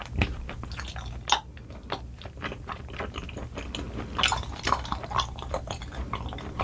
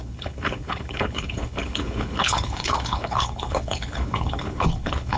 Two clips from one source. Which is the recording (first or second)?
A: first